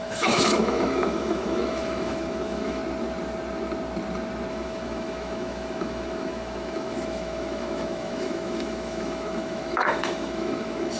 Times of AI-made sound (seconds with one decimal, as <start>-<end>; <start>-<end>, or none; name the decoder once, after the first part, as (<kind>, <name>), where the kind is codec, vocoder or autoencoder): 0.0-2.8 (autoencoder, DAC-VAE); 4.5-11.0